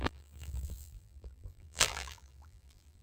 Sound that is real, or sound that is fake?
fake